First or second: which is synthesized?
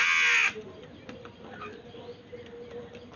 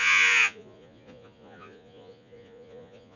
second